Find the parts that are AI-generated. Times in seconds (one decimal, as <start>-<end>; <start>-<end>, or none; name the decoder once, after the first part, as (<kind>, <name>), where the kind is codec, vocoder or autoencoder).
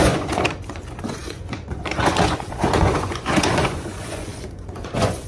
0.0-5.3 (vocoder, Vocos)